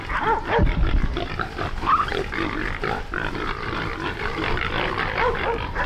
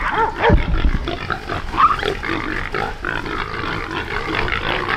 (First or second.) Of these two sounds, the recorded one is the second